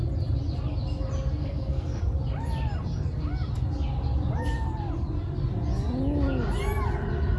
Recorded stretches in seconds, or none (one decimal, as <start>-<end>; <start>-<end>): 0.0-1.4; 2.0-7.4